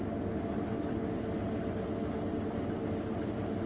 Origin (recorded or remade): recorded